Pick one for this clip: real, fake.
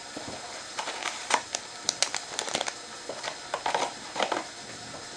real